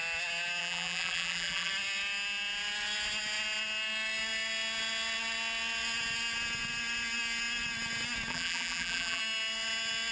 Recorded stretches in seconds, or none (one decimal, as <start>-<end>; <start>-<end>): 0.0-0.6; 1.7-8.3; 9.2-10.1